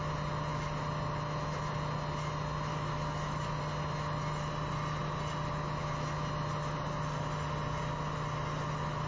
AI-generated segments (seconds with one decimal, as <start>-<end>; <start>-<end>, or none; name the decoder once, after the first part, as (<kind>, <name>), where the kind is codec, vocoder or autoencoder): 2.7-3.6 (autoencoder, DAC-VAE)